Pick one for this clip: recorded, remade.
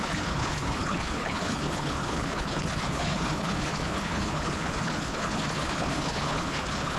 remade